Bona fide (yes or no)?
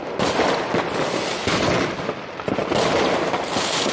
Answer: yes